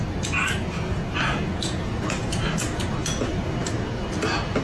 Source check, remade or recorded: recorded